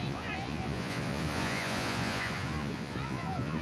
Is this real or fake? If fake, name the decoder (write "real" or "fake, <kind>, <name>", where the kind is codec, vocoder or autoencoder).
fake, vocoder, Vocos